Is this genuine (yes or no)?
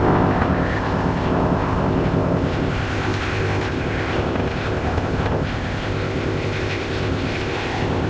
no